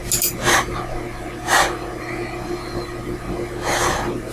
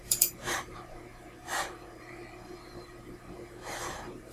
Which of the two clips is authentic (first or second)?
first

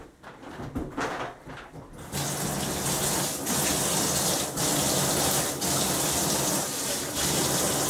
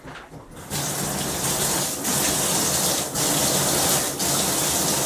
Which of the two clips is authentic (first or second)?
first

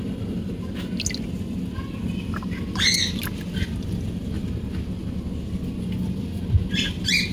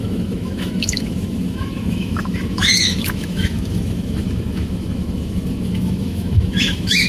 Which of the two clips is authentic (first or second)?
first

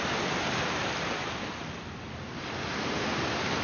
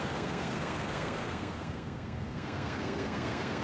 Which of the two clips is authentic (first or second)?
first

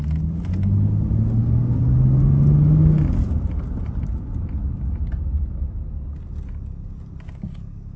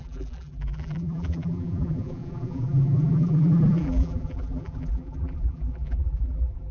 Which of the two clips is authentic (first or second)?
first